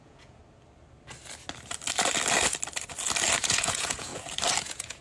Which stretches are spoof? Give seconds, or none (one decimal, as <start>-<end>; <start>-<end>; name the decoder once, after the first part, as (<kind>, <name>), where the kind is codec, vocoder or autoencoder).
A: 0.0-0.4 (vocoder, Vocos); 3.4-4.1; 4.6-5.0